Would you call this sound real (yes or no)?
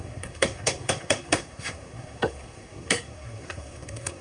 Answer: no